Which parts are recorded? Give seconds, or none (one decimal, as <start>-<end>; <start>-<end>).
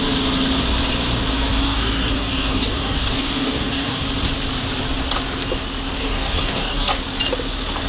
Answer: 0.0-1.5; 4.0-6.0; 6.9-7.9